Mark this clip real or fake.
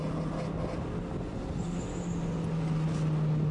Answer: real